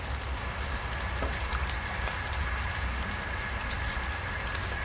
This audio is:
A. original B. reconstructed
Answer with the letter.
A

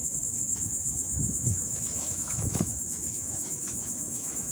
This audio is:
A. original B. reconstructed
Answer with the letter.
B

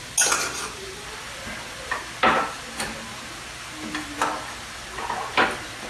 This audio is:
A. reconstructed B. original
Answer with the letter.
B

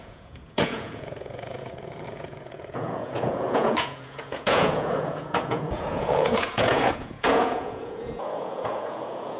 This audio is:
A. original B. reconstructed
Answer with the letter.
B